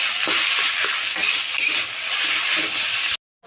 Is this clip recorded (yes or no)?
yes